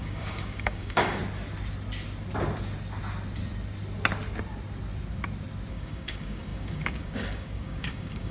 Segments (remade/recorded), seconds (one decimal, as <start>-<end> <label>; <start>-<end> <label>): 0.0-1.2 remade; 1.2-5.7 recorded; 5.7-8.3 remade